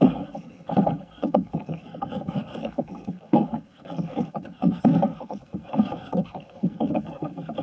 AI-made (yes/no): yes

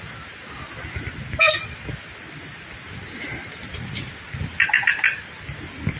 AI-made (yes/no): no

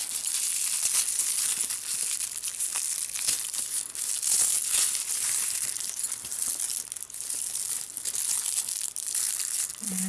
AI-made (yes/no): no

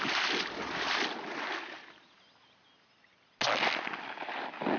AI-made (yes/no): no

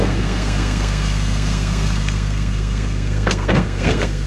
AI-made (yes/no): yes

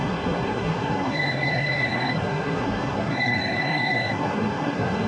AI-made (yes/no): yes